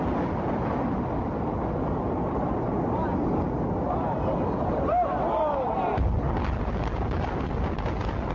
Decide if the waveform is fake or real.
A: real